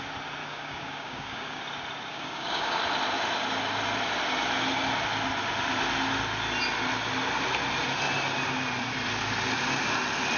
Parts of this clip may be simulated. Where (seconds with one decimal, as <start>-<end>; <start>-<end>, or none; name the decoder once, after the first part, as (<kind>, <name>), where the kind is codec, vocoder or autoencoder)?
0.4-1.6 (codec, DAC); 2.1-2.8